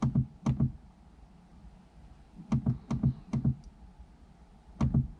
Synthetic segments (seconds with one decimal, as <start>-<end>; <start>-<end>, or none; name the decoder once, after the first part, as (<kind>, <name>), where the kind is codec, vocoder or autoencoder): none